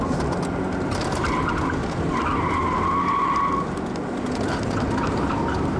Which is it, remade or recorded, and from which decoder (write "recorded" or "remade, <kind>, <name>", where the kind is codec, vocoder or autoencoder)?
recorded